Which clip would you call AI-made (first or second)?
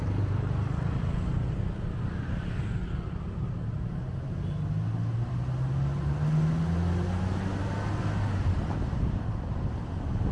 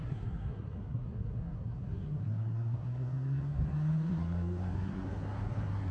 second